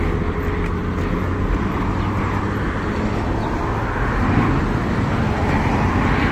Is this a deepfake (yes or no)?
no